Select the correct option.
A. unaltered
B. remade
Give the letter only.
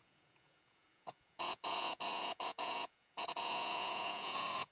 B